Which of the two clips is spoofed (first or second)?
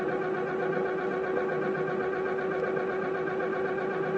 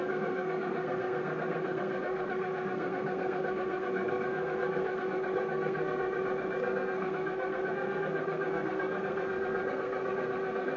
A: second